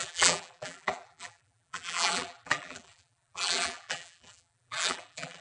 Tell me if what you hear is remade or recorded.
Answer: remade